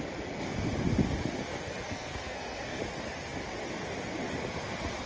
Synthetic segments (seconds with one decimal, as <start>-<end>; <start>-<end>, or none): 1.5-2.8